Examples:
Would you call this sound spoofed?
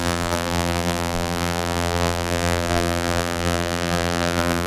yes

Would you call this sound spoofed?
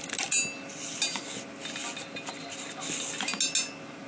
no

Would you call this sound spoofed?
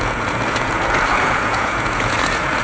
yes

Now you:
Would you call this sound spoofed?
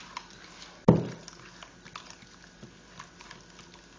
no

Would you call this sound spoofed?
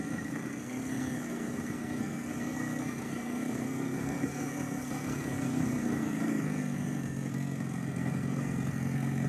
yes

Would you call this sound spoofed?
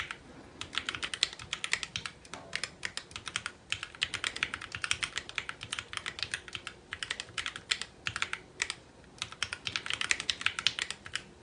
no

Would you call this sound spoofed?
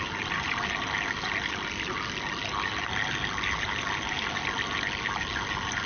no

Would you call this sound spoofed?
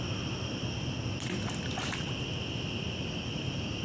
no